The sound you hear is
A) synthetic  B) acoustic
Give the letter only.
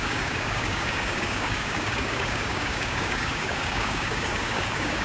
A